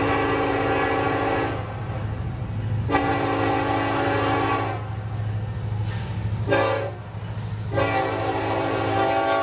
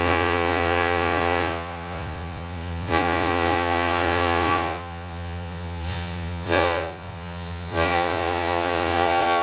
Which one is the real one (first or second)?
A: first